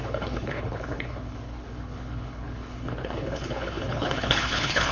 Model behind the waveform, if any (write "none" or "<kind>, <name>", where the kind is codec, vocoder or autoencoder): codec, HILCodec